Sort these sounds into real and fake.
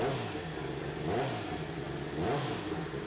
real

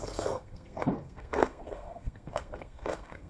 fake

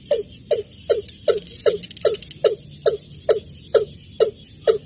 real